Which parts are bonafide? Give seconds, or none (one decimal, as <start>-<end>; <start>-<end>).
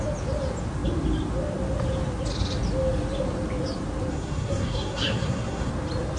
0.0-4.1; 5.7-6.2